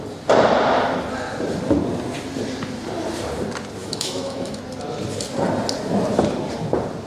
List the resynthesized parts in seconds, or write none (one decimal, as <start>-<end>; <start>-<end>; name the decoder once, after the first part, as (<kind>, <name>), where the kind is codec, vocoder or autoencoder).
3.8-4.6 (autoencoder, DAC-VAE)